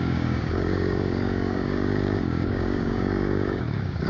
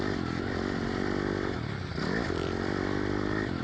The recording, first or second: second